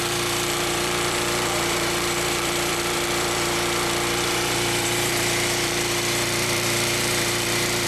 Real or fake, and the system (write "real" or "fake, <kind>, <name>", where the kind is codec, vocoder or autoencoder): fake, vocoder, BigVGAN v2